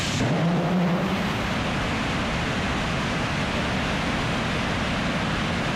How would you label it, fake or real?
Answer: real